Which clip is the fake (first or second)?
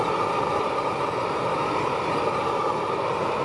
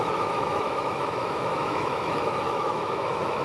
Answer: second